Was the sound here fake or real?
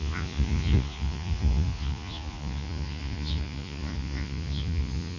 fake